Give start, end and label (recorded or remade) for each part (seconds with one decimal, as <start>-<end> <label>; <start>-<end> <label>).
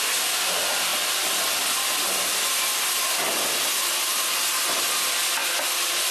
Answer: 0.0-6.1 recorded